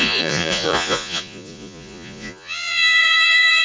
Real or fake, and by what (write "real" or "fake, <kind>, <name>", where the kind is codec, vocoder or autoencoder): fake, vocoder, Vocos